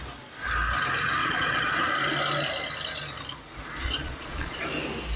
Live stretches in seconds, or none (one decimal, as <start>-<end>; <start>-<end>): 0.0-1.2; 1.8-3.8; 4.6-5.2